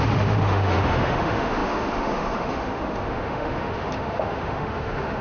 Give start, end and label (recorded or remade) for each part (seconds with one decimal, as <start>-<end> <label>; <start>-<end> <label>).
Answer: 0.0-5.2 remade